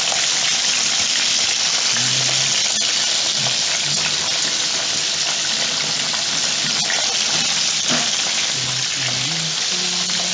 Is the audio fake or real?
real